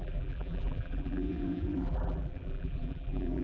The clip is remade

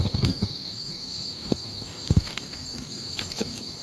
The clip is remade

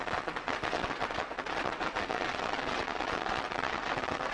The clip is remade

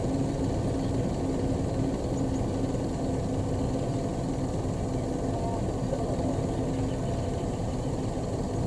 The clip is recorded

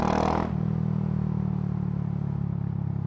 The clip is recorded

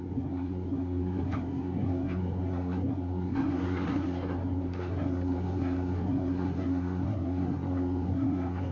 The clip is remade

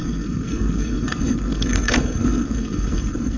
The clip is remade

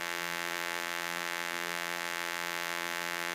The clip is remade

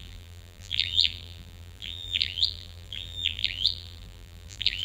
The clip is remade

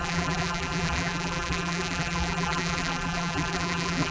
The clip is remade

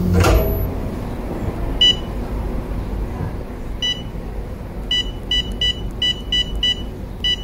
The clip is recorded